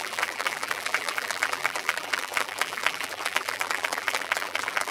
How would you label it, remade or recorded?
remade